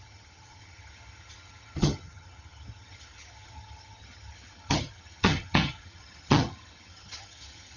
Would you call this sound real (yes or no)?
no